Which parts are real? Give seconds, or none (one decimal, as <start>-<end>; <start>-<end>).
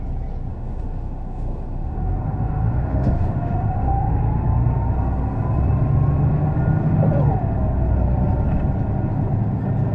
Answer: 0.0-0.5; 4.2-9.9